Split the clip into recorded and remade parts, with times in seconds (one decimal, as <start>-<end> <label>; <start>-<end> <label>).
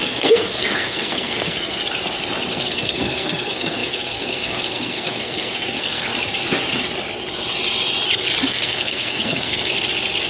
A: 0.0-1.8 remade; 1.8-2.5 recorded; 2.5-6.1 remade; 6.1-8.5 recorded; 8.5-9.7 remade; 9.7-10.3 recorded